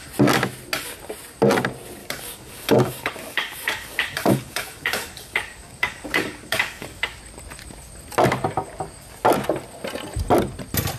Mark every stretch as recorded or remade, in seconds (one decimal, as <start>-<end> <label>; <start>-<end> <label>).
0.0-2.0 recorded; 2.0-7.2 remade; 7.2-11.0 recorded